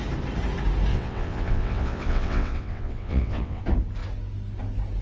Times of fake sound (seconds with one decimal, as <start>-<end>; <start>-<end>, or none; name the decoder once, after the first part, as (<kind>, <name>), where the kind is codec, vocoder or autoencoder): 0.9-3.6 (vocoder, WaveNeXt)